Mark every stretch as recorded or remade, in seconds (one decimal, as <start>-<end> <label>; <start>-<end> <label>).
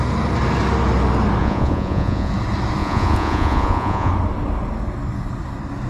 0.0-1.4 recorded; 1.4-2.3 remade; 2.3-2.8 recorded; 2.8-4.1 remade; 4.1-5.9 recorded